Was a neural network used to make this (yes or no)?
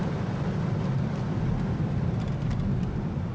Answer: yes